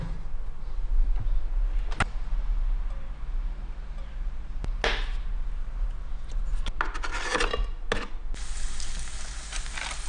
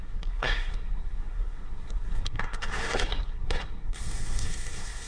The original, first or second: first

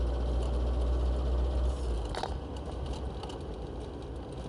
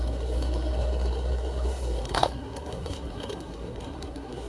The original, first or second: first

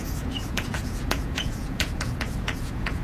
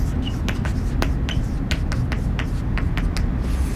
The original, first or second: second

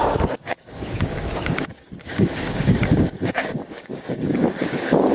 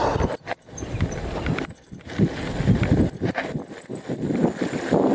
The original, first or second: second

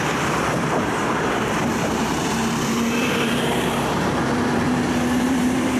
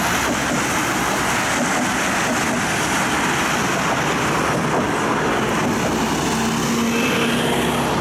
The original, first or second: second